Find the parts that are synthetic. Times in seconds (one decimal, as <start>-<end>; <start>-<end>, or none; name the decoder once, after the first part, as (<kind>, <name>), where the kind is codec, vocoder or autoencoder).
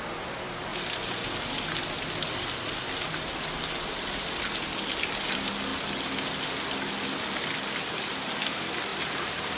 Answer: 0.0-0.7 (vocoder, BigVGAN v2); 3.9-5.7; 8.5-9.6